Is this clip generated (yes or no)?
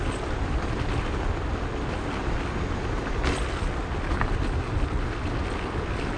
no